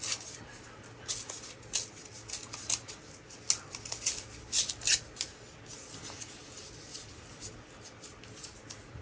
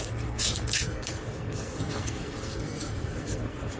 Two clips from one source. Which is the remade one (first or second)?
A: second